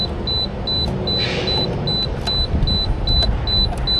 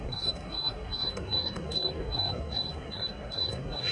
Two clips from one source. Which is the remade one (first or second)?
second